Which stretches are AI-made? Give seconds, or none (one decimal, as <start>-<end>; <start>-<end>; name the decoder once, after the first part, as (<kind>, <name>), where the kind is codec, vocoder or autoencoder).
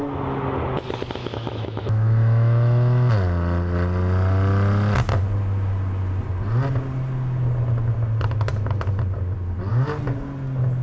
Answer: 1.2-3.1 (autoencoder, DAC-VAE)